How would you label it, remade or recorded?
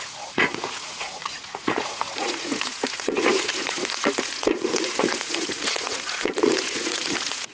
remade